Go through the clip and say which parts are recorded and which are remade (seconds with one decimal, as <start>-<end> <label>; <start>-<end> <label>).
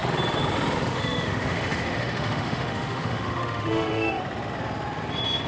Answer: 0.0-0.9 recorded; 0.9-4.2 remade; 4.2-5.5 recorded